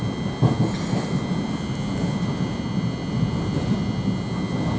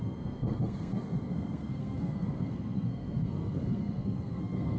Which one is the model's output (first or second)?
second